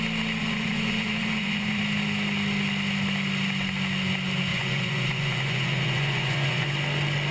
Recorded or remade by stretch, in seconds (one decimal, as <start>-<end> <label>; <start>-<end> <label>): 0.0-0.4 recorded; 0.4-1.8 remade; 1.8-4.5 recorded; 4.5-6.7 remade; 6.7-7.3 recorded